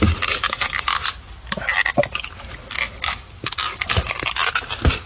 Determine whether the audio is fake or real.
real